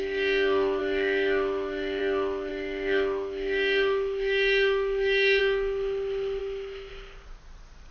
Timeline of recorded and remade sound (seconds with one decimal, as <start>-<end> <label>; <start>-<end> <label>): 0.0-0.8 recorded; 0.8-2.0 remade; 2.0-2.5 recorded; 2.5-5.4 remade; 5.4-6.4 recorded; 6.4-6.9 remade; 6.9-7.9 recorded